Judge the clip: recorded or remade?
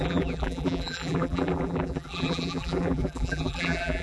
remade